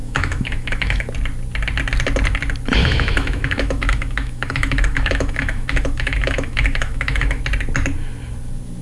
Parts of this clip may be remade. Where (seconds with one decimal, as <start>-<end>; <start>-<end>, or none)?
0.0-1.1; 2.8-7.4